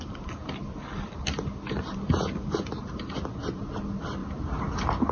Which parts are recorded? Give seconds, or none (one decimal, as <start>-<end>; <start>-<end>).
0.0-5.1